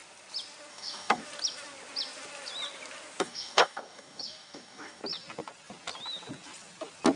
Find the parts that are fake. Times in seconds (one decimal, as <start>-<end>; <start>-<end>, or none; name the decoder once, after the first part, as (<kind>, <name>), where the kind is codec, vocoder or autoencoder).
0.7-1.2 (codec, DAC); 3.2-5.0